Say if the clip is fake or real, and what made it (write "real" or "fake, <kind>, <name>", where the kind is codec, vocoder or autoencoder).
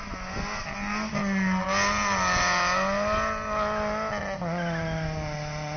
real